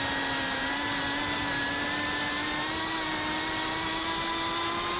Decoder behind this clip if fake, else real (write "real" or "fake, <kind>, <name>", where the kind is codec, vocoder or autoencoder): real